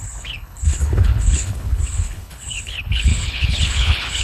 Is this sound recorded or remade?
remade